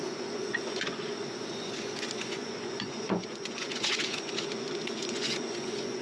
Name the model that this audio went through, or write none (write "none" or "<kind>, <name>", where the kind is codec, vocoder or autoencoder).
vocoder, Vocos